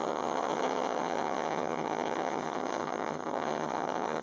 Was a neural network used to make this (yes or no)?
yes